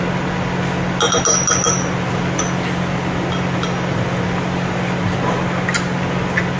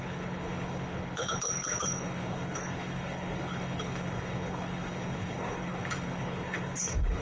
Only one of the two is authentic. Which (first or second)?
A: first